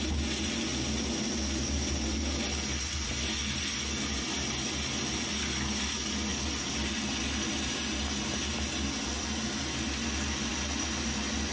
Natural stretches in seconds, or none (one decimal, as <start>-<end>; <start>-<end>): 0.0-11.5